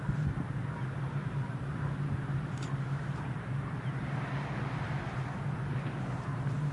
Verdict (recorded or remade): remade